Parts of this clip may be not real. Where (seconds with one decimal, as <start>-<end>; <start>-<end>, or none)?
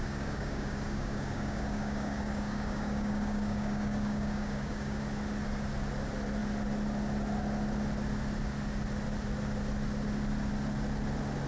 0.0-5.0